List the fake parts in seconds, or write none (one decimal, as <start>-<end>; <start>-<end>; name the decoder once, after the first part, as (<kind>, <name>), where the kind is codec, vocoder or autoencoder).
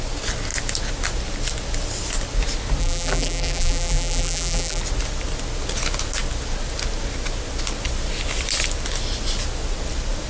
2.8-4.8 (vocoder, BigVGAN v2)